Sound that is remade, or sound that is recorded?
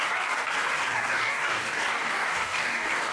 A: remade